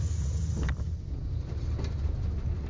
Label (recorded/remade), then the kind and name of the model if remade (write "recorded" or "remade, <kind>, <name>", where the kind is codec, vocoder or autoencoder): recorded